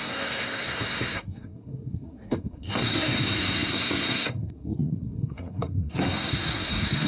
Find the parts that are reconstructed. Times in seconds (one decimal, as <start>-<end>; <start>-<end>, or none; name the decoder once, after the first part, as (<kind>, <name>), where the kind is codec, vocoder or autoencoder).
0.0-7.1 (codec, SNAC)